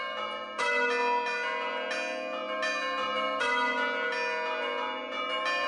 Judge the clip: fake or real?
real